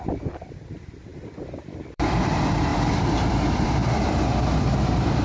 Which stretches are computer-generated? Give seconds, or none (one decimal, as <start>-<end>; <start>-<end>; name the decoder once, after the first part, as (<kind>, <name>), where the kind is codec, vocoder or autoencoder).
0.0-5.2 (vocoder, BigVGAN v2)

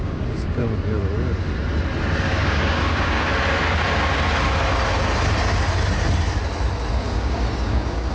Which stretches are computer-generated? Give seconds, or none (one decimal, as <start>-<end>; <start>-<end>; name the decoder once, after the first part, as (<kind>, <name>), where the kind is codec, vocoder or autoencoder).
0.0-0.6 (codec, DAC); 2.2-3.3; 6.9-8.1

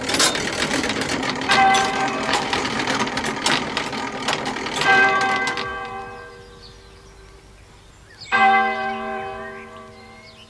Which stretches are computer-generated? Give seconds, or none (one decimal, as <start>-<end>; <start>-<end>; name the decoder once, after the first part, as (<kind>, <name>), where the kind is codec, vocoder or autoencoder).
0.7-3.2 (vocoder, BigVGAN v2)

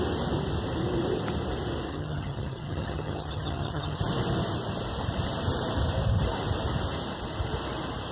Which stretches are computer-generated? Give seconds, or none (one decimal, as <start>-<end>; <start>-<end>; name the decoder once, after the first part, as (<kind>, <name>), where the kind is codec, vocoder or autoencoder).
1.9-4.0 (vocoder, HiFi-GAN)

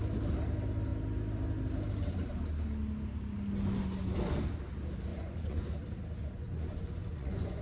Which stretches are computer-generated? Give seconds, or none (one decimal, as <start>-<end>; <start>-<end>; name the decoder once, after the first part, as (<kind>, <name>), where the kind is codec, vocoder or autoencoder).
5.1-5.7 (vocoder, Vocos); 6.2-7.6

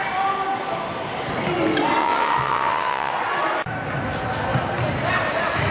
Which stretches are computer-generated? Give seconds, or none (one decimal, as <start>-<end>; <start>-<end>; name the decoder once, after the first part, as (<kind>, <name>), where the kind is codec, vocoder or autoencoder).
2.0-3.1 (vocoder, WaveNeXt)